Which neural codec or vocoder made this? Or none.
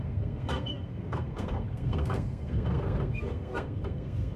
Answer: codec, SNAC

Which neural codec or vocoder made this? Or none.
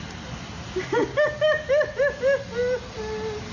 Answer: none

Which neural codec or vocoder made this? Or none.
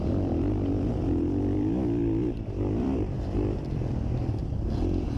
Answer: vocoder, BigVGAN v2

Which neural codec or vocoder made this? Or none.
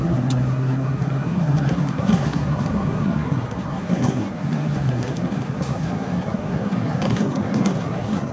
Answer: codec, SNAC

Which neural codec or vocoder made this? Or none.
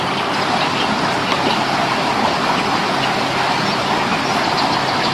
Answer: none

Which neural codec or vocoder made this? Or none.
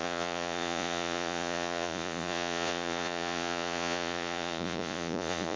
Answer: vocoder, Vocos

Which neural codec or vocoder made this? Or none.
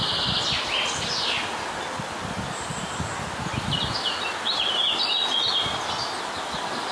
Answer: none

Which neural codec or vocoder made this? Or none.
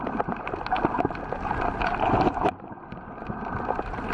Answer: none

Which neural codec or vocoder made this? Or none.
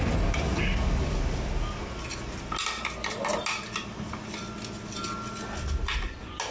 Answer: none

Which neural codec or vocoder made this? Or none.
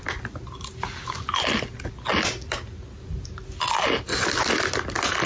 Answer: none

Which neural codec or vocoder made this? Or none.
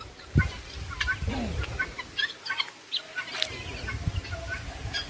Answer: none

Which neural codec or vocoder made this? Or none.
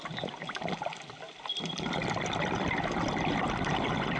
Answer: none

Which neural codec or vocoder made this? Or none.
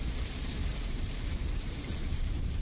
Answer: vocoder, BigVGAN v2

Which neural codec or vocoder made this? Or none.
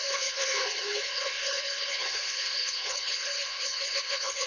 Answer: codec, HILCodec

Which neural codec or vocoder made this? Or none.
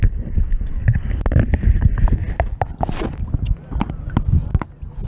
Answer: none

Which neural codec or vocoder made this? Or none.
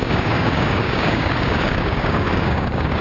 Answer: codec, DAC